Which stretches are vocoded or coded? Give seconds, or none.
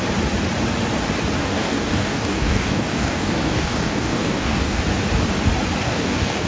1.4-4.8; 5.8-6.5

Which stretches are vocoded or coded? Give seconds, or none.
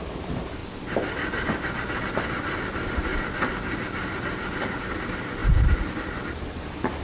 0.0-0.6; 2.1-3.1; 4.8-5.4; 6.4-7.0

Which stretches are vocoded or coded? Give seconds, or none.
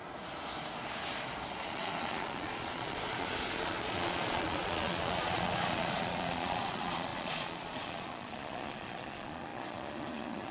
1.6-10.5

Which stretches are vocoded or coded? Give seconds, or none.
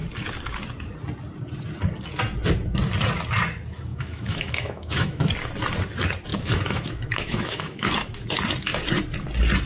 3.9-5.3; 6.3-7.9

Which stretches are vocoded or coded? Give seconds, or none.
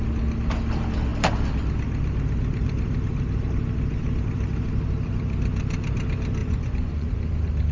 6.4-7.1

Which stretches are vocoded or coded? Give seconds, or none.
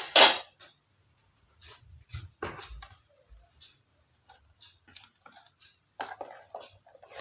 1.0-2.3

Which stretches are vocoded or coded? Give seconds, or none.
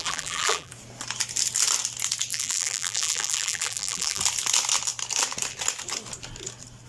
0.0-0.7; 2.3-4.2